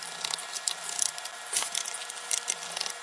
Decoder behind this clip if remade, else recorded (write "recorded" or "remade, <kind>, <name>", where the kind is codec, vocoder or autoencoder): recorded